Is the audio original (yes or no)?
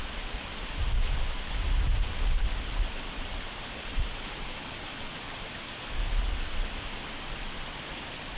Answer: yes